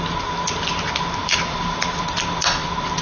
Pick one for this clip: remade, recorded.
recorded